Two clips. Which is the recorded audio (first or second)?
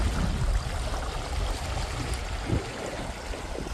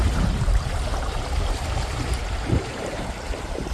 first